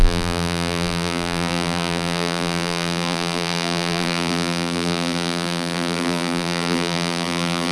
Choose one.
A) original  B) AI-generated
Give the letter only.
B